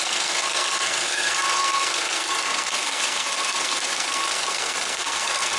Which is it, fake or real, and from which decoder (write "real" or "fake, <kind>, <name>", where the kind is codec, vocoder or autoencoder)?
fake, codec, SNAC